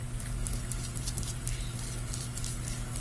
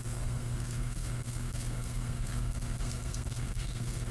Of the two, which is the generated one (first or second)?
second